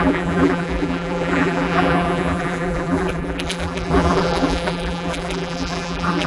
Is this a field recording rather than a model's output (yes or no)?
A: no